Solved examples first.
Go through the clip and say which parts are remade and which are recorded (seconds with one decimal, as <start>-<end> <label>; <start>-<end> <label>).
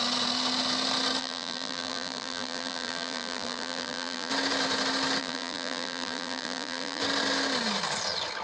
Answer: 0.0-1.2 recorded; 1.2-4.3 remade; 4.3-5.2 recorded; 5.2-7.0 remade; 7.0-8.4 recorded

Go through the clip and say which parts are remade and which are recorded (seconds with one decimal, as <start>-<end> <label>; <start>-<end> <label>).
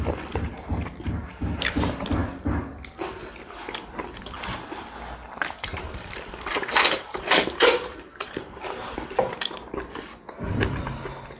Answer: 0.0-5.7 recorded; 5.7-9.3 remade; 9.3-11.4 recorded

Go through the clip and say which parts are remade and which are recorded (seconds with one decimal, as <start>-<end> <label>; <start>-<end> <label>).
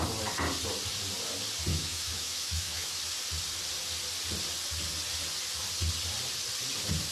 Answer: 0.0-1.7 recorded; 1.7-3.0 remade; 3.0-7.1 recorded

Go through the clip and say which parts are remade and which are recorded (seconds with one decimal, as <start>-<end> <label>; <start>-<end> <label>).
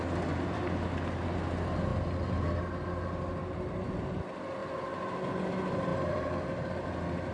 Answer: 0.0-5.9 recorded; 5.9-6.7 remade; 6.7-7.3 recorded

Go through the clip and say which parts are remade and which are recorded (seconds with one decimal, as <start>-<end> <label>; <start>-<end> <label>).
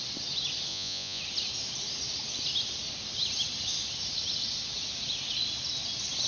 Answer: 0.0-0.7 recorded; 0.7-1.2 remade; 1.2-6.3 recorded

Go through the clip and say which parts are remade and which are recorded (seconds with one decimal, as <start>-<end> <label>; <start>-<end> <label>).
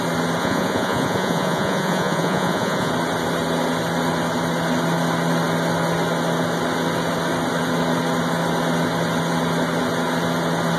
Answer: 0.0-0.4 recorded; 0.4-2.9 remade; 2.9-10.8 recorded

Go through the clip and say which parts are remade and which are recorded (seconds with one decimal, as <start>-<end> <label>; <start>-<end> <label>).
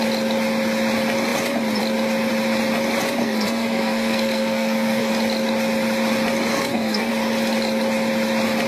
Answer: 0.0-3.2 recorded; 3.2-5.1 remade; 5.1-6.5 recorded; 6.5-7.1 remade; 7.1-8.7 recorded